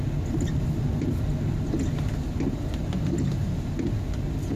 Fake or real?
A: real